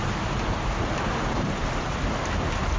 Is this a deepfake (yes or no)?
no